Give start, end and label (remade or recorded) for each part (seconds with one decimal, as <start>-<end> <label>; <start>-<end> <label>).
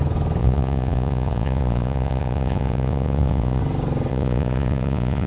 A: 0.0-0.4 recorded; 0.4-3.6 remade; 3.6-4.1 recorded; 4.1-5.3 remade